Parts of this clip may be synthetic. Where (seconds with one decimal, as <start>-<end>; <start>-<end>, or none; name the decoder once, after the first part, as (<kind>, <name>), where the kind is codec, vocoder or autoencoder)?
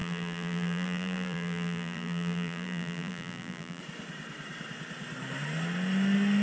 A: 0.0-3.8 (vocoder, BigVGAN v2)